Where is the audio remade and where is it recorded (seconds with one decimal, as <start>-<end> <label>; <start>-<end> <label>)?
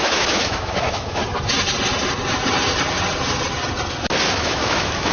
0.0-1.2 remade; 1.2-4.3 recorded; 4.3-5.1 remade